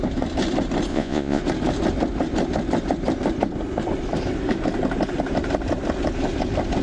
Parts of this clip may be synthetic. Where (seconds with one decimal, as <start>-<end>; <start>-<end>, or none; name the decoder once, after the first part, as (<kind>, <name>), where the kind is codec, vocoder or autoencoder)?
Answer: 0.9-1.4 (vocoder, Vocos)